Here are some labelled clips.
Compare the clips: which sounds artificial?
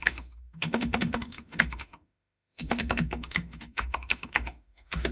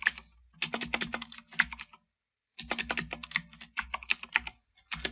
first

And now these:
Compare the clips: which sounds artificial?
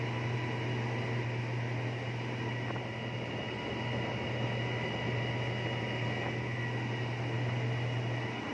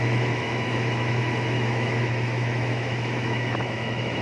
second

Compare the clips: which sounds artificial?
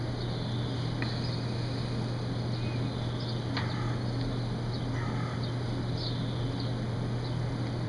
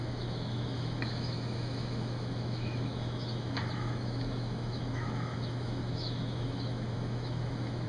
second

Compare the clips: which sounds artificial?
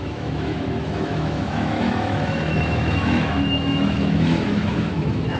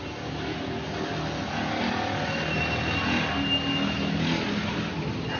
first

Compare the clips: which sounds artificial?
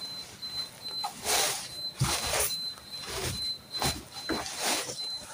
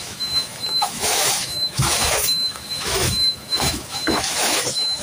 second